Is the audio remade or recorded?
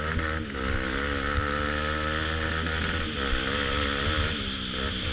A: recorded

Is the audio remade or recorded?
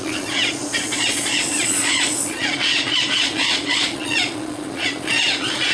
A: remade